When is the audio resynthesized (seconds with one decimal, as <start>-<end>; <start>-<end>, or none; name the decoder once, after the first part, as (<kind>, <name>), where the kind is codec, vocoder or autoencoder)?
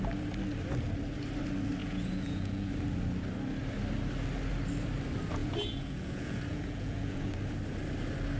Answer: 1.8-2.7 (vocoder, Vocos); 5.4-7.3